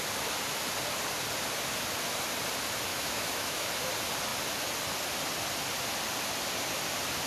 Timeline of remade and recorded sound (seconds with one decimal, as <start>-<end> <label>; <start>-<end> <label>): 0.0-2.9 recorded; 2.9-3.7 remade; 3.7-7.3 recorded